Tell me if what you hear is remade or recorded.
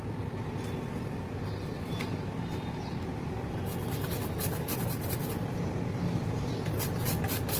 recorded